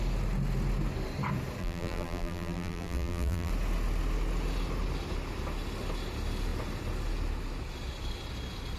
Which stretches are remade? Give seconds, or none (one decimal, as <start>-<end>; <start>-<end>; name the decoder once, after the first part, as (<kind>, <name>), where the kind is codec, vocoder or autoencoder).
1.6-3.5 (vocoder, BigVGAN v2)